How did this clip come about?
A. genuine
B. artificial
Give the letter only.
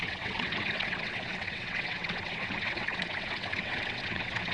B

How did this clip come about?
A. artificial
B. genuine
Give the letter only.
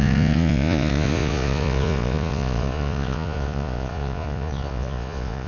A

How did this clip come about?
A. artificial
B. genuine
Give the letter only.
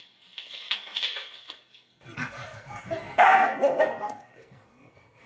A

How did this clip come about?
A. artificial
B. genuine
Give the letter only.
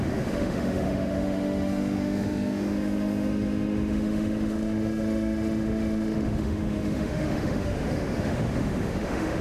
A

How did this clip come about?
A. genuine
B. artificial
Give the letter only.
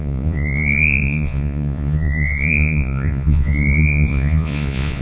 B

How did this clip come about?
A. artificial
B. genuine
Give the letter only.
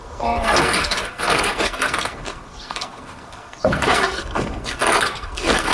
A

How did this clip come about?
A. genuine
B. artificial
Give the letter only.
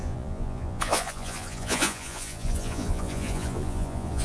B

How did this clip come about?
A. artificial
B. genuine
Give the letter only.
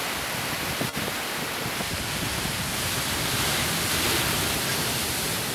B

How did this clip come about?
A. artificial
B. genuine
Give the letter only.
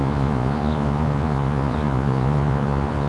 A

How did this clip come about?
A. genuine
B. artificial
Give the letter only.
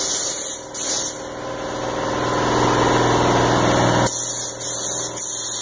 A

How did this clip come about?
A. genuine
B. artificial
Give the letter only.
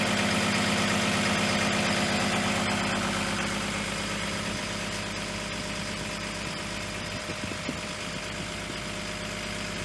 A